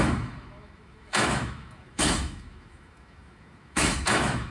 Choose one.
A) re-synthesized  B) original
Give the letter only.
A